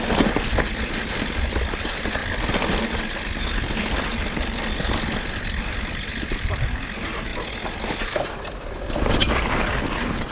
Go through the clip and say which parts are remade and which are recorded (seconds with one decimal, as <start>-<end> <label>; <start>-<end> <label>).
0.0-10.3 recorded